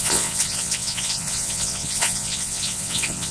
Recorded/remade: remade